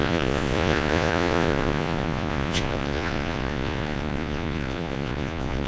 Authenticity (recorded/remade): remade